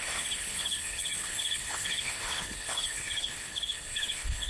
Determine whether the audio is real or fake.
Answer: fake